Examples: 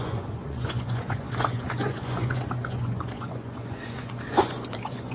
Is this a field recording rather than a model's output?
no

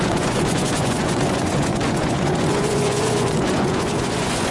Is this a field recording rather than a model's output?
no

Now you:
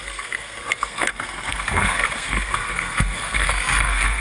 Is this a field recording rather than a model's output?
no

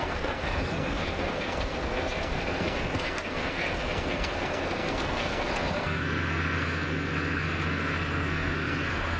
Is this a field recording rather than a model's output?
no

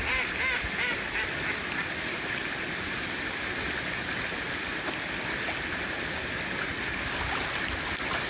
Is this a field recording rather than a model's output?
yes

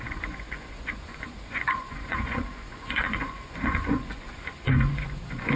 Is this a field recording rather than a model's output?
no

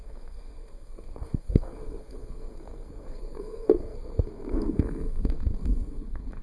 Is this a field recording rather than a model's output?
no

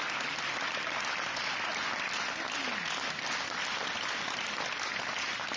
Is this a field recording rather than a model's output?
yes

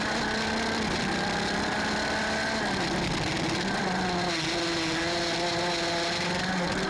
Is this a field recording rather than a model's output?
yes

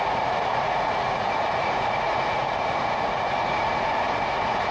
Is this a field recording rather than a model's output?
no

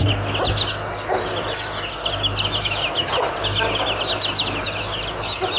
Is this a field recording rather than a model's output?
yes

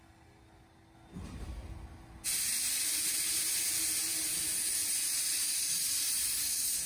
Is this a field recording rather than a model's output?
yes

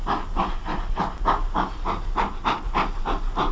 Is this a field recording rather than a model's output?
yes